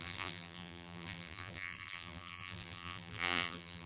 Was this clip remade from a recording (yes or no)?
yes